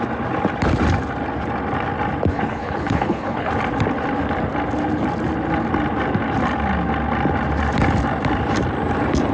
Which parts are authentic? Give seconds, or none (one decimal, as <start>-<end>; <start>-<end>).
0.0-2.3; 3.5-9.3